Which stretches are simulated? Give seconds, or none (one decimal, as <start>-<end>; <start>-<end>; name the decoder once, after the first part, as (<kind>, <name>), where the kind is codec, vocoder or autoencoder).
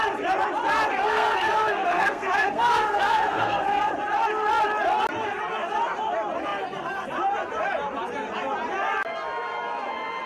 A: 1.0-3.9 (codec, SNAC)